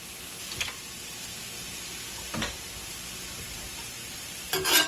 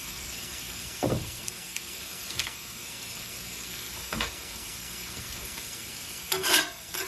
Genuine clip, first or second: first